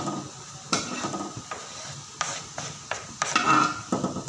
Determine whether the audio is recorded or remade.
recorded